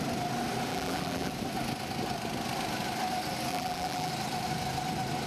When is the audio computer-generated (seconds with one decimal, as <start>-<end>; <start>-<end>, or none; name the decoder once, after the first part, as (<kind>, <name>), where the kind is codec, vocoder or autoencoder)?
0.7-1.3 (vocoder, BigVGAN v2); 3.5-4.1